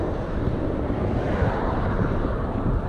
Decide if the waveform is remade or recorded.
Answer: recorded